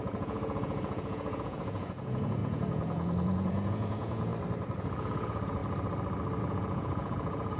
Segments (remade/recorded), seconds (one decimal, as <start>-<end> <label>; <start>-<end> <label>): 0.0-4.3 remade; 4.3-4.8 recorded; 4.8-5.6 remade; 5.6-6.4 recorded; 6.4-7.6 remade

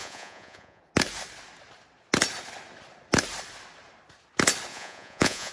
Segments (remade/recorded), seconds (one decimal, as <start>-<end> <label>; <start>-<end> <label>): 0.0-0.8 remade; 0.8-4.7 recorded; 4.7-5.5 remade

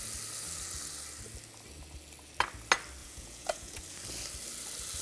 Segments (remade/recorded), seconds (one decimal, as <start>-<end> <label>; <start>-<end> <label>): 0.0-3.0 recorded; 3.0-3.8 remade; 3.8-5.0 recorded

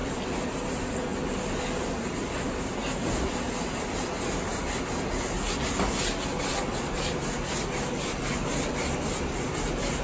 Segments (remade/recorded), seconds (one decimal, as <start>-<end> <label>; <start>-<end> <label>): 0.0-10.0 recorded